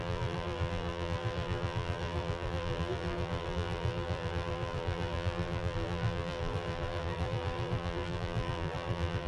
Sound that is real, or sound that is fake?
fake